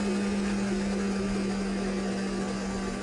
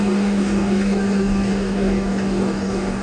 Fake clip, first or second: second